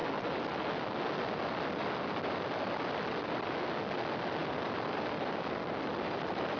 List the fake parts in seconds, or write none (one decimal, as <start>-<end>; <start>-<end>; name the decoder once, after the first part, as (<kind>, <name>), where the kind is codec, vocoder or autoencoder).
none